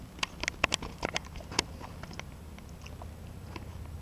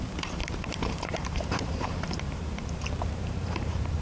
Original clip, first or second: first